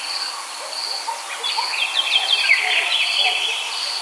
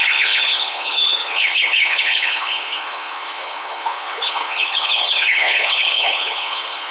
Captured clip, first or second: first